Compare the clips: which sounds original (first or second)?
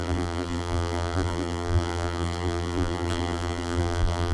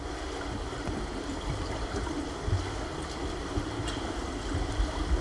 second